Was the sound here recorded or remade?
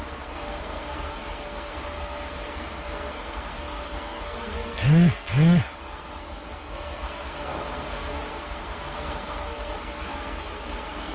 remade